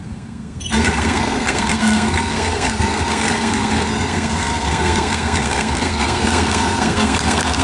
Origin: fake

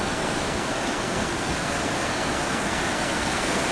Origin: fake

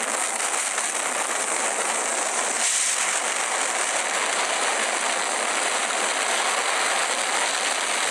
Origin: real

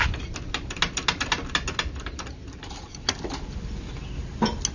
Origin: real